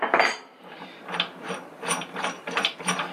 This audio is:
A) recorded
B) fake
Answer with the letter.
B